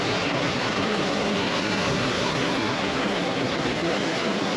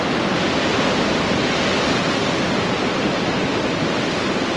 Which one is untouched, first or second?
second